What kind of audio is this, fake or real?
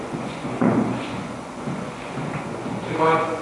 fake